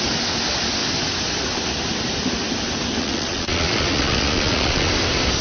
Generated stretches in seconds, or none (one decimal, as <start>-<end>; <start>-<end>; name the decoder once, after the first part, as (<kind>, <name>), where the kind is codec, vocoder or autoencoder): 3.0-4.9 (vocoder, Vocos)